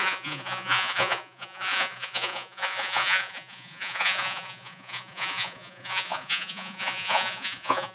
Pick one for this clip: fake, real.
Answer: fake